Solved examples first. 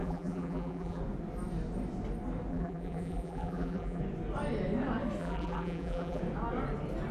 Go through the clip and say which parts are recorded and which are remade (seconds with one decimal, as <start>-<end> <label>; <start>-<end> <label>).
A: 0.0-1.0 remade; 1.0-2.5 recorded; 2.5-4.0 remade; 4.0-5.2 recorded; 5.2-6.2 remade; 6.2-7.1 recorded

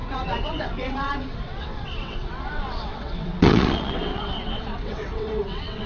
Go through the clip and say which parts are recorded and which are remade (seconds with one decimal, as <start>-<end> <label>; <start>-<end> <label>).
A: 0.0-5.9 remade

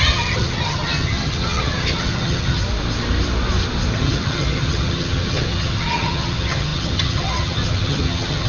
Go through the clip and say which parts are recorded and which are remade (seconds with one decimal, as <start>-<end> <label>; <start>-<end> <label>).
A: 0.0-2.6 remade; 2.6-3.9 recorded; 3.9-8.5 remade

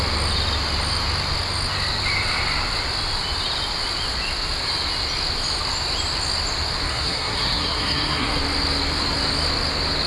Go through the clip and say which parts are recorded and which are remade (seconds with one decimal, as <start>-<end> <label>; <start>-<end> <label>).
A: 0.0-6.9 recorded; 6.9-8.4 remade; 8.4-10.1 recorded

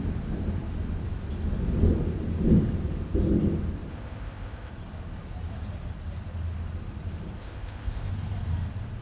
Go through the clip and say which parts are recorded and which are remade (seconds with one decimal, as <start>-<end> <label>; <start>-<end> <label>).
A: 0.0-3.9 recorded; 3.9-4.7 remade; 4.7-7.4 recorded; 7.4-8.1 remade; 8.1-9.0 recorded